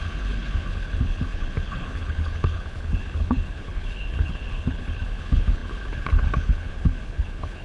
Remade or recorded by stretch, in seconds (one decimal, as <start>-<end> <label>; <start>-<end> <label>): 0.0-7.6 remade

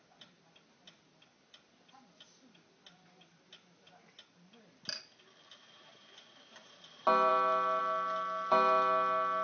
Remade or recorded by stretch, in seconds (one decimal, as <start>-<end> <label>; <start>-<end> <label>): 0.0-9.4 recorded

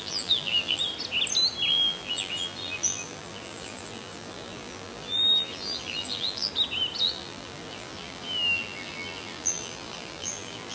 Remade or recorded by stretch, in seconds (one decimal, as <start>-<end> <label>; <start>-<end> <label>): 0.0-0.8 remade; 0.8-1.7 recorded; 1.7-6.5 remade; 6.5-7.0 recorded; 7.0-10.7 remade

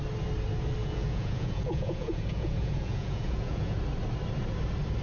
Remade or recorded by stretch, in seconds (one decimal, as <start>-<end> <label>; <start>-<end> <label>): 0.0-0.8 recorded; 0.8-3.8 remade; 3.8-5.0 recorded

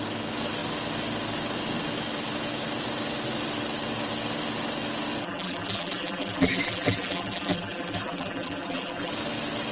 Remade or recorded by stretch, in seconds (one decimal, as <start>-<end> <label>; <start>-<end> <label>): 0.0-5.2 recorded; 5.2-9.1 remade; 9.1-9.7 recorded